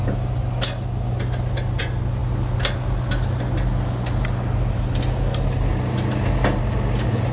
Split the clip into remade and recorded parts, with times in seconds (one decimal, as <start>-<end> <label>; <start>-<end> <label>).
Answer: 0.0-7.3 recorded